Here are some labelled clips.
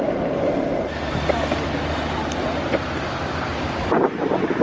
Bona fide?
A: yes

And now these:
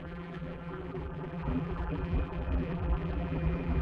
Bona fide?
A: no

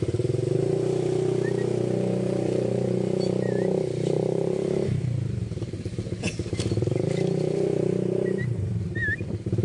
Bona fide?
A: no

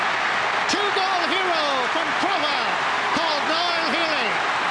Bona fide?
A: yes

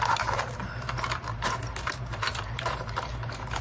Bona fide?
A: no